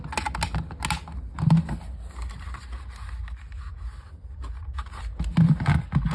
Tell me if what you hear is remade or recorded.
recorded